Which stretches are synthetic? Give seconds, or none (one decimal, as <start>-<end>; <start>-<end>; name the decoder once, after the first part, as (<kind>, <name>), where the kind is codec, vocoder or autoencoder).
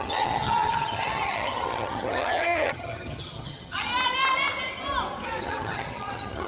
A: 0.0-3.9 (vocoder, HiFi-GAN); 5.4-6.5